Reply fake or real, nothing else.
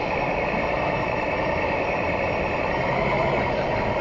real